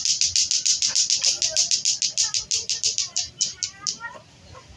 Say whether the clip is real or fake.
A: real